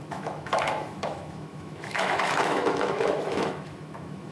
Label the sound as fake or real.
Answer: fake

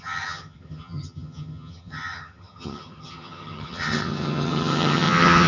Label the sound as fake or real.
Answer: fake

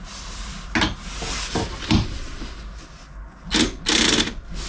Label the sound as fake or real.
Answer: real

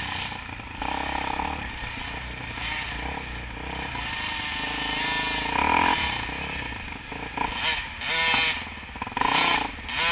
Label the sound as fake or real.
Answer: real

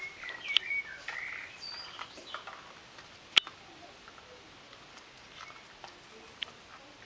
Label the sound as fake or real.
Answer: real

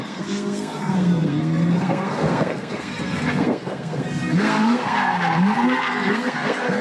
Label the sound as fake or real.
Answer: fake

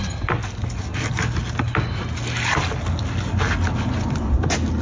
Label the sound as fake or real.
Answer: real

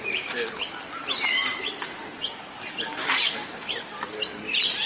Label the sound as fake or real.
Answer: fake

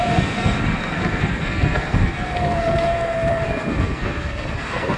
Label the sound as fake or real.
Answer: fake